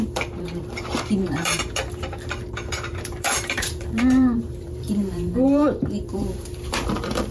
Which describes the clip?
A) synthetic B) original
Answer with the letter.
A